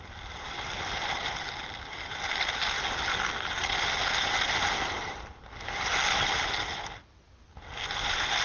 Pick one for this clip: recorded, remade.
recorded